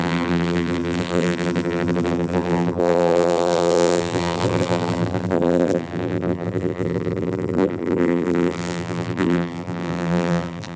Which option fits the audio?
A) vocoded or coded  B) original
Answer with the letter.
A